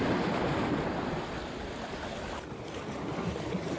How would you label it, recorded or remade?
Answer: recorded